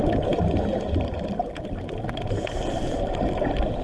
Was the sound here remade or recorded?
recorded